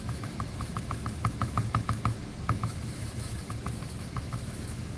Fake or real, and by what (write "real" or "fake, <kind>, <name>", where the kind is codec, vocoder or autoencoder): fake, autoencoder, DAC-VAE